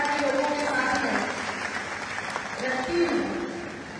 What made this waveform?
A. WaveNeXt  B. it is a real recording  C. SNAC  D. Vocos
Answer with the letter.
B